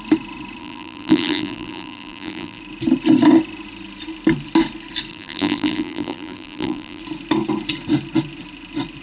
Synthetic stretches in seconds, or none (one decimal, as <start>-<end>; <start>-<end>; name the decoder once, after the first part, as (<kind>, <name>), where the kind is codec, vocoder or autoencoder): 0.6-2.6 (vocoder, BigVGAN v2); 5.1-7.0